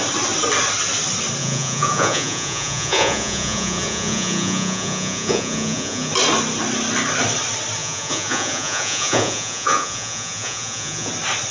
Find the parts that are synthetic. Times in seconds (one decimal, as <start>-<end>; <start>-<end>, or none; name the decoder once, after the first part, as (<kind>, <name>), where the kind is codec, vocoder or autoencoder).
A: 1.4-6.1 (vocoder, Vocos); 7.8-11.1

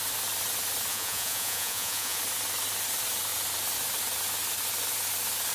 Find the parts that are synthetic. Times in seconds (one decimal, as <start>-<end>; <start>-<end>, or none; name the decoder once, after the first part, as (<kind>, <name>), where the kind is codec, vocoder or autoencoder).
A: 0.9-2.2 (vocoder, Vocos)

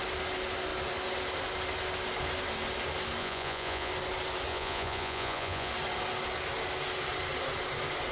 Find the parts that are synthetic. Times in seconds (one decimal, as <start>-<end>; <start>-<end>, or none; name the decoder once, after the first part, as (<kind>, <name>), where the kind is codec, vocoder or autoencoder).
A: 3.2-3.9 (vocoder, Vocos); 4.5-5.7

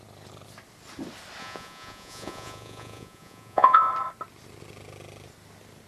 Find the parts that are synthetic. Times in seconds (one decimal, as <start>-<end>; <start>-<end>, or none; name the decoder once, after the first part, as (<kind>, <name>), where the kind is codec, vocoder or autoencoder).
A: 1.4-3.9 (vocoder, Vocos)

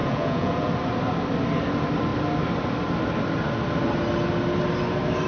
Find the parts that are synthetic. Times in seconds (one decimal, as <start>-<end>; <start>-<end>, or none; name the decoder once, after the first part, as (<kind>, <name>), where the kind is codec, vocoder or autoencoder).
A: 0.0-0.7 (vocoder, Vocos)

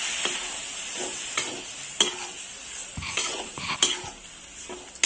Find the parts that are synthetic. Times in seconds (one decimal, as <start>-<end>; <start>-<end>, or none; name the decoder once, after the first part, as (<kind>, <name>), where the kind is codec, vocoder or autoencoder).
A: 2.8-3.6 (vocoder, Vocos)